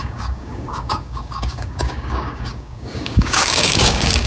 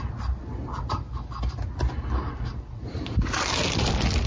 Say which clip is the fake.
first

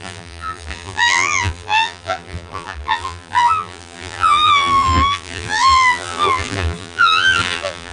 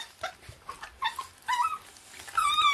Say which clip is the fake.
first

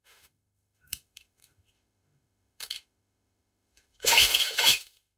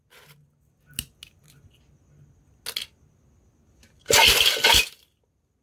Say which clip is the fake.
first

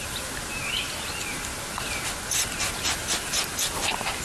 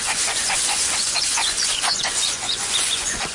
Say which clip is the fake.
second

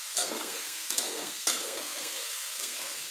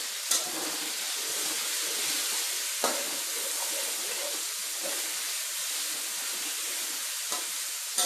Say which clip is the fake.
first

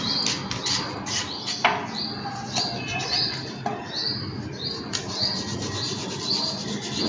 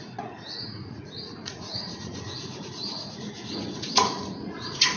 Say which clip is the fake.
second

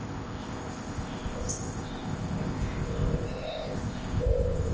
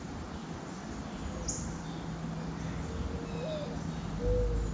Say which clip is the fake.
first